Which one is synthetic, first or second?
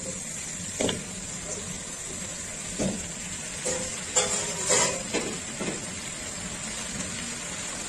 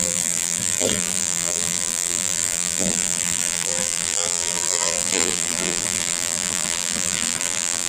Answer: second